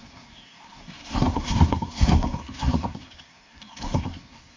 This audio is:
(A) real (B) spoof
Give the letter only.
B